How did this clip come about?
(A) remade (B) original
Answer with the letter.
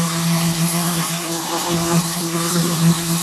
A